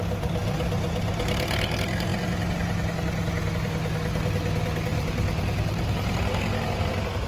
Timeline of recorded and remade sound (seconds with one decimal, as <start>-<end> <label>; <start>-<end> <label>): 0.0-0.4 recorded; 0.4-1.2 remade; 1.2-4.9 recorded; 4.9-6.2 remade; 6.2-7.3 recorded